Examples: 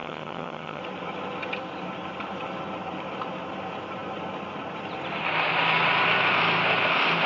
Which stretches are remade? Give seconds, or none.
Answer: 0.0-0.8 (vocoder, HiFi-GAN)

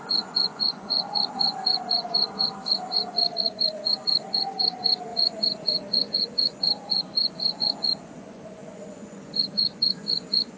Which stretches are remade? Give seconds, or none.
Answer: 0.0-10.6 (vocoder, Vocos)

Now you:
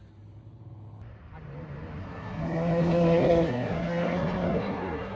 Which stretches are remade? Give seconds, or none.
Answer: 2.0-5.2 (codec, SNAC)